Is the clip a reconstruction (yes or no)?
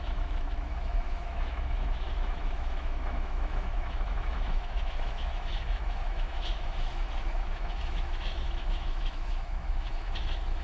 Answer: yes